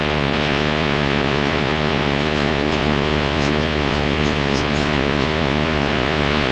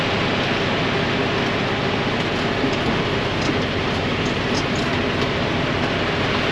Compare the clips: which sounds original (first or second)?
second